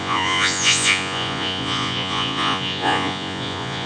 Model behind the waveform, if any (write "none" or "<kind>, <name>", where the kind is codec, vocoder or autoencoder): vocoder, Vocos